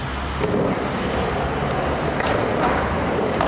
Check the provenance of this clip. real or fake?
real